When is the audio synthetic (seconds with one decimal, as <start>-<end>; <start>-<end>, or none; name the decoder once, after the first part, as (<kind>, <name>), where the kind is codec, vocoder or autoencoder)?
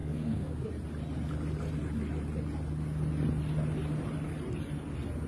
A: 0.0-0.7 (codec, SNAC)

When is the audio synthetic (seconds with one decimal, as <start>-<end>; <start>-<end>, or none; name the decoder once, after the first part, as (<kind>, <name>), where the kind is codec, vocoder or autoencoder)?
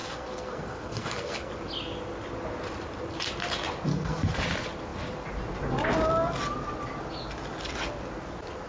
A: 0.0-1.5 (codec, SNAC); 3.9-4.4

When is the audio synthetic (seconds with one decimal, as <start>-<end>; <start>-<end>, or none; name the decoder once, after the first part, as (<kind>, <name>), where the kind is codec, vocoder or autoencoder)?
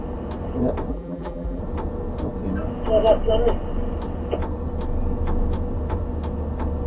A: 0.9-1.6 (vocoder, BigVGAN v2)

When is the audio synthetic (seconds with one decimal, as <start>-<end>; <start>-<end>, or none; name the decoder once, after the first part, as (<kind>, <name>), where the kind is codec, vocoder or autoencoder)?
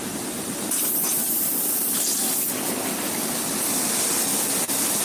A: none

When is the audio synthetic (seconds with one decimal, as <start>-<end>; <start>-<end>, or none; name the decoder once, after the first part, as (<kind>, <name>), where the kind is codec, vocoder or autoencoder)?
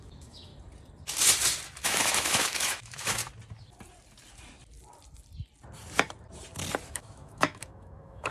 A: 0.0-0.5 (autoencoder, DAC-VAE); 1.8-3.2; 6.9-8.3